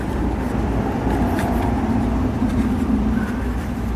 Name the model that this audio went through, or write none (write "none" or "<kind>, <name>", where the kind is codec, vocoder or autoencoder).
vocoder, BigVGAN v2